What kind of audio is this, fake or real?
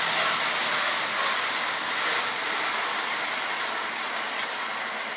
real